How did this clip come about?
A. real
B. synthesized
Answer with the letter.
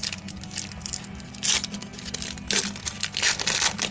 A